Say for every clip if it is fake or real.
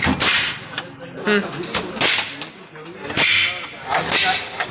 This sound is real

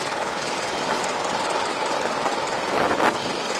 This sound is fake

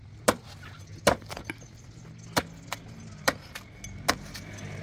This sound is real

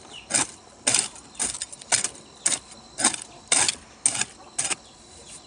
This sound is real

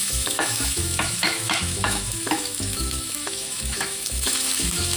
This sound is fake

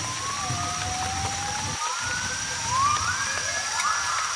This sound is real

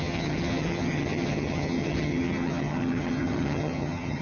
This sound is fake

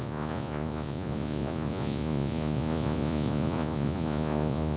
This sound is fake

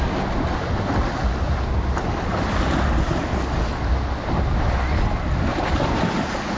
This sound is real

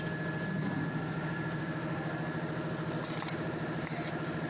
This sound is real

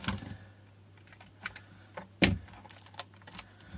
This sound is real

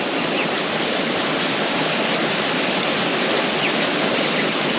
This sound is real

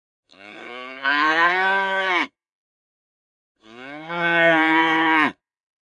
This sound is fake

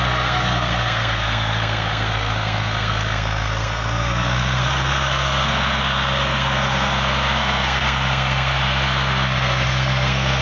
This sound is fake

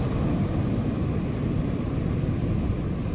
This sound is real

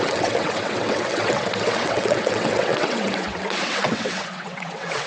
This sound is fake